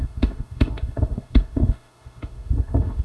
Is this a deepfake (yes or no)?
yes